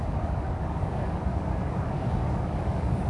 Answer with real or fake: fake